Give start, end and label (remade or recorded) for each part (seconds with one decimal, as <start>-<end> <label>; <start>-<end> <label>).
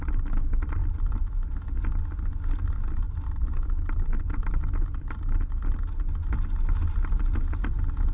0.0-8.1 recorded